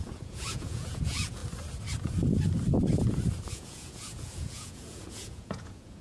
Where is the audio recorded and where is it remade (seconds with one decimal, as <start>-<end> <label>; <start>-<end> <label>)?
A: 0.0-1.4 remade; 1.4-3.5 recorded; 3.5-6.0 remade